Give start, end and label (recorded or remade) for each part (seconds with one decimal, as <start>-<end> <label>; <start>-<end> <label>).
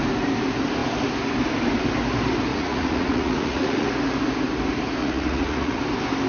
0.0-2.5 recorded; 2.5-3.9 remade; 3.9-5.0 recorded; 5.0-5.8 remade; 5.8-6.3 recorded